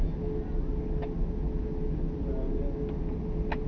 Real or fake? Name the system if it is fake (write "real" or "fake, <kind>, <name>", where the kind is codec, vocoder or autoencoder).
real